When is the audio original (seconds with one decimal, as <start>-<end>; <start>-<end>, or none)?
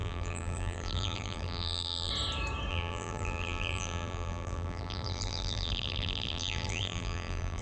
2.1-2.7